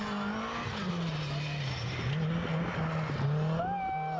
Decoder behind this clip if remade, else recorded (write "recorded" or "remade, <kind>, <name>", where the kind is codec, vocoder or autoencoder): recorded